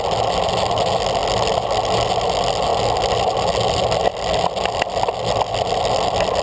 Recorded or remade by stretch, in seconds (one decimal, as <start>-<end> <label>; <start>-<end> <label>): 0.0-6.4 recorded